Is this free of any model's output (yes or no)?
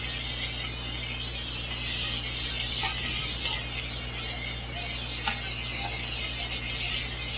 yes